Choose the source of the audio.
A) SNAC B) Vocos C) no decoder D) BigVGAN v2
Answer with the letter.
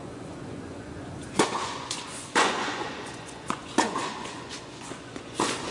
B